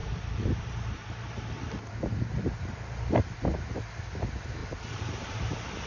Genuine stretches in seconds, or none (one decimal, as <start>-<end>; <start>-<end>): 3.4-4.6